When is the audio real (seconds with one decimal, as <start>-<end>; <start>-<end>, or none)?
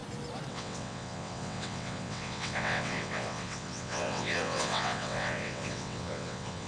0.0-0.5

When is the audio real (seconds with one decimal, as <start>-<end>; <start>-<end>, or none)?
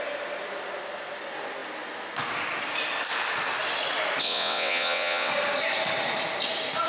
0.0-4.2; 5.3-6.9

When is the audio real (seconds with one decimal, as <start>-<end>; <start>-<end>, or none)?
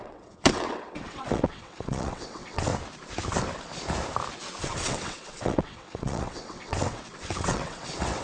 2.7-4.6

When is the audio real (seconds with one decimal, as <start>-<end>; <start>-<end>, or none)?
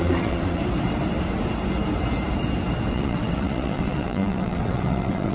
0.6-2.9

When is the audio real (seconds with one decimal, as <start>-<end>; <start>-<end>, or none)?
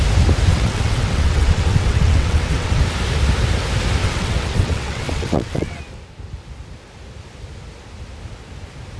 0.0-0.5; 2.8-4.0; 5.8-9.0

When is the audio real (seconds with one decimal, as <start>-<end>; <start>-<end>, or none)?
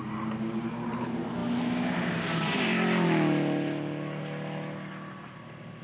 0.0-5.8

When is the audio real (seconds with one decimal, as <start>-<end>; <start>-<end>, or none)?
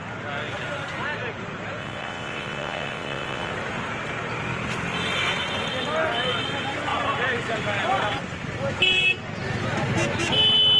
0.0-1.8; 3.5-10.8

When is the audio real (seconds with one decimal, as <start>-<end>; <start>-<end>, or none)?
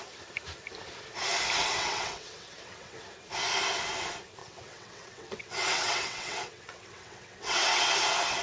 0.0-1.6; 3.0-4.4; 7.9-8.4